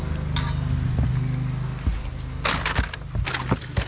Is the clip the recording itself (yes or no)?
yes